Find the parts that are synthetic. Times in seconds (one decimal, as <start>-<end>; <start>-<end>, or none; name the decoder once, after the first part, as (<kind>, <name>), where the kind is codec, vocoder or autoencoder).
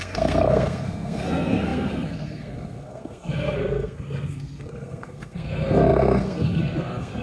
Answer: 0.0-7.2 (codec, SNAC)